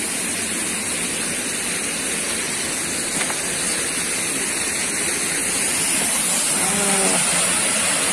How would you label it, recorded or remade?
recorded